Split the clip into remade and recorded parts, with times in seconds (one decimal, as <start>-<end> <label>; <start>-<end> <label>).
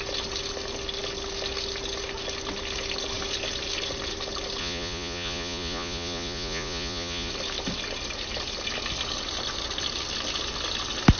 0.0-4.6 recorded; 4.6-7.3 remade; 7.3-11.2 recorded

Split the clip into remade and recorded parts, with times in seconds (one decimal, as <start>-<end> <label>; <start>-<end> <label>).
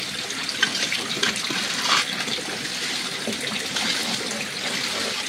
0.0-0.4 recorded; 0.4-1.2 remade; 1.2-5.3 recorded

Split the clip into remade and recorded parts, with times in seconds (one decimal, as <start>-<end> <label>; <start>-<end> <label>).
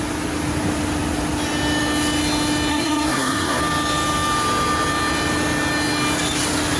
0.0-2.7 recorded; 2.7-3.6 remade; 3.6-6.8 recorded